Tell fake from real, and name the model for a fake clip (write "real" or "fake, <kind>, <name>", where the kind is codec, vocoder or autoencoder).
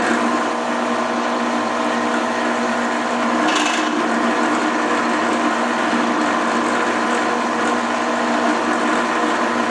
real